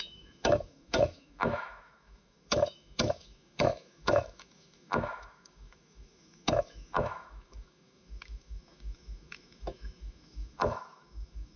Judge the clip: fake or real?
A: fake